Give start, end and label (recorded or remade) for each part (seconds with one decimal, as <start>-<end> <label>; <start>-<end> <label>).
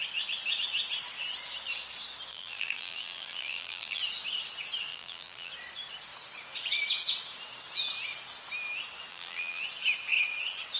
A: 0.0-2.3 recorded; 2.3-4.0 remade; 4.0-4.9 recorded; 4.9-5.5 remade; 5.5-9.1 recorded; 9.1-9.6 remade; 9.6-10.8 recorded